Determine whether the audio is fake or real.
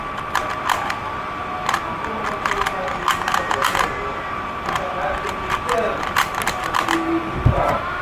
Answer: real